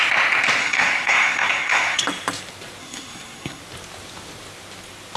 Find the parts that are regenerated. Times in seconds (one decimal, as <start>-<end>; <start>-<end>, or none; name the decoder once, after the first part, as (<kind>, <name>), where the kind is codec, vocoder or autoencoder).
0.6-2.0 (codec, SNAC); 2.8-3.6